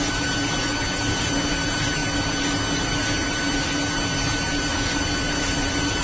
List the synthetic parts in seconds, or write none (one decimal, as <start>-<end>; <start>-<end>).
none